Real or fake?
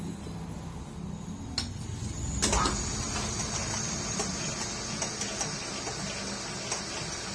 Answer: real